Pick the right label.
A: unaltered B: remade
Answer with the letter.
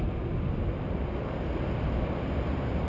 A